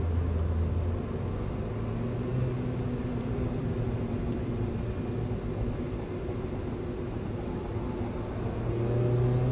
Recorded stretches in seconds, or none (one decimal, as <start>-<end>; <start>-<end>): 0.0-2.3; 4.6-9.5